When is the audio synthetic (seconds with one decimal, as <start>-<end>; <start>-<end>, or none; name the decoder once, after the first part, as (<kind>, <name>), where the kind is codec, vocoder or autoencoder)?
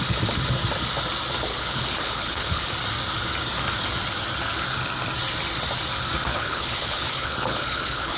1.5-2.7 (codec, HILCodec); 6.3-8.2